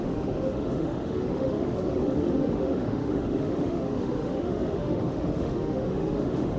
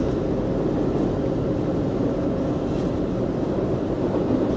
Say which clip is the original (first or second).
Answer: second